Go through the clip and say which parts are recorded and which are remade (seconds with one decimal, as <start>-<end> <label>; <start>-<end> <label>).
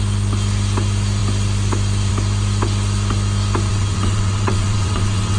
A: 0.0-3.7 recorded; 3.7-5.4 remade